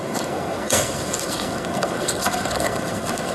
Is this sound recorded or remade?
remade